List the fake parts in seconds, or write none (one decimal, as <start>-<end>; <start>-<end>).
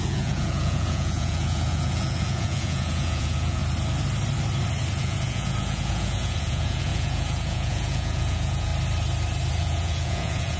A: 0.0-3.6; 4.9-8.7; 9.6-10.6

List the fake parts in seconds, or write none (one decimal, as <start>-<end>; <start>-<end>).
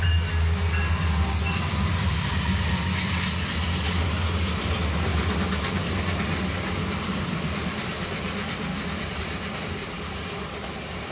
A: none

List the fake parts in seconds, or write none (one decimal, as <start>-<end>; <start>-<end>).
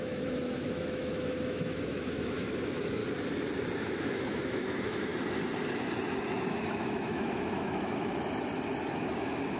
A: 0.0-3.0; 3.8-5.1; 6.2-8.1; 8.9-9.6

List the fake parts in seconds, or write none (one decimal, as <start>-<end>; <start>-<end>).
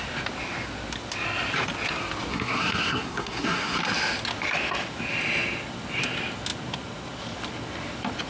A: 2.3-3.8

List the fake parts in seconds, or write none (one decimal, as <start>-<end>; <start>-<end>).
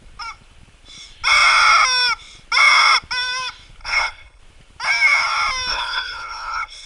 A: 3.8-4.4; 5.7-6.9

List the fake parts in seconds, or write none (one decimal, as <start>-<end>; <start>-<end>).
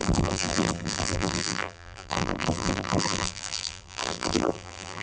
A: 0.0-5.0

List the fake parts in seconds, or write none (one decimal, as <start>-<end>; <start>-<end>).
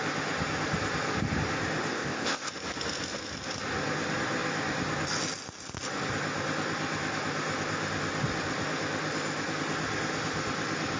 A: 1.9-2.5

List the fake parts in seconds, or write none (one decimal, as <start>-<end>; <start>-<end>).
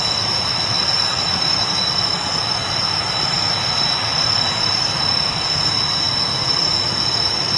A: 0.4-2.5